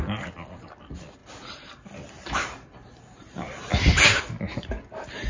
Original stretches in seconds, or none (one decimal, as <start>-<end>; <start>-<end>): 0.0-1.2; 4.2-5.3